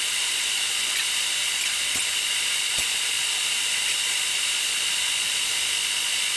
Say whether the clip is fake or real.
real